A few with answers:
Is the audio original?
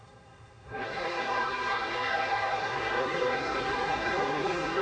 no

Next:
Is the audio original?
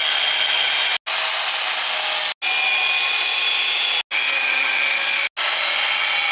yes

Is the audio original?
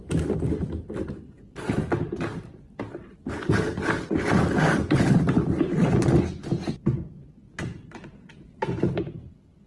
yes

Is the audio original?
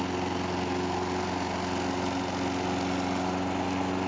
yes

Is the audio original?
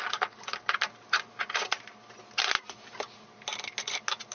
yes